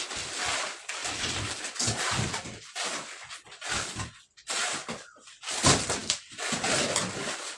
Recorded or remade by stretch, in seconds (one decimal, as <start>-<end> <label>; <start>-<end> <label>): 0.0-7.6 recorded